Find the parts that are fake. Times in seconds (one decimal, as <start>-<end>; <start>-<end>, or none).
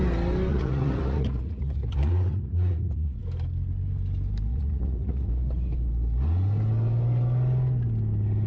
0.5-3.2; 4.5-5.3